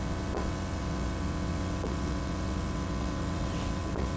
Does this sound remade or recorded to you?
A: remade